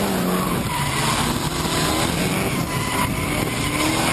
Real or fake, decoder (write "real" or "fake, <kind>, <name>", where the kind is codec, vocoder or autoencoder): real